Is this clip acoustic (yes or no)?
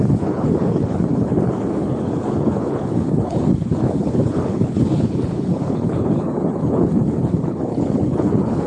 no